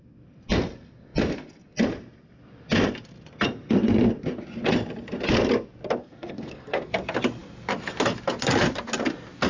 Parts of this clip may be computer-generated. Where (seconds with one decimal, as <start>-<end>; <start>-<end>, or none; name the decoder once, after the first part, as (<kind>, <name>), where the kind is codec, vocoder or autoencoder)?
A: 6.0-6.9 (codec, SNAC)

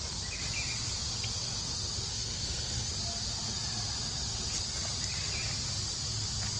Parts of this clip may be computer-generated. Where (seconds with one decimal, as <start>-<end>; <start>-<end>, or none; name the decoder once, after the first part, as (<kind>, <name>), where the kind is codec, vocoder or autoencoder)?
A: 2.1-2.9 (codec, SNAC)

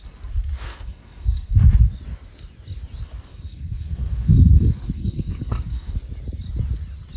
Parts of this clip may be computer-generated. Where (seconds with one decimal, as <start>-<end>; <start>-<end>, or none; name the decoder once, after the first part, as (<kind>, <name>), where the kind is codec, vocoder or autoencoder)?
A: 0.5-1.5 (codec, SNAC); 3.3-6.0

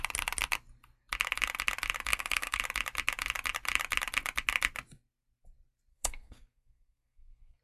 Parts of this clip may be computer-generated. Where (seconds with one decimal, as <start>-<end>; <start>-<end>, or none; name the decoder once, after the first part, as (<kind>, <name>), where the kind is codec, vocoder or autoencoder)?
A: 2.1-2.6 (codec, SNAC); 5.9-7.6

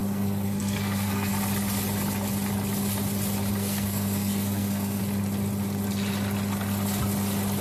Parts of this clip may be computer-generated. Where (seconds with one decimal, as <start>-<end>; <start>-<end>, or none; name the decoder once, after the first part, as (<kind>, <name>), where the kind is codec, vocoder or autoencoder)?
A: 0.0-1.3 (codec, SNAC); 3.5-5.0

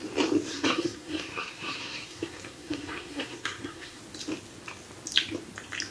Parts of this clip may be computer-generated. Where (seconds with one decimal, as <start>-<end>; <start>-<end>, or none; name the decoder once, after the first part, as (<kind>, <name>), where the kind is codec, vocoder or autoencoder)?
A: 0.5-4.0 (codec, SNAC)